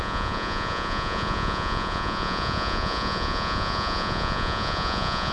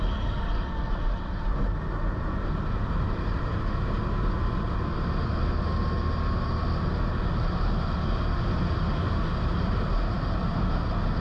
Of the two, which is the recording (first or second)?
second